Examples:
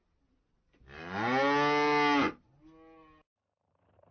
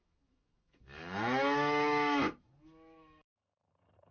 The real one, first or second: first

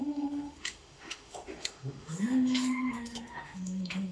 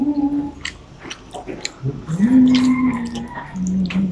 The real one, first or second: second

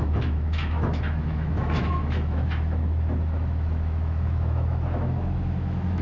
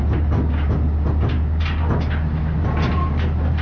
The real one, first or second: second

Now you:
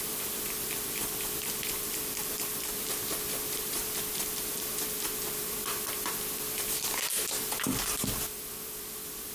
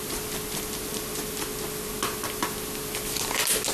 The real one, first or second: second